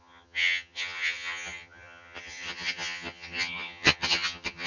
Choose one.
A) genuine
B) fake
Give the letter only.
B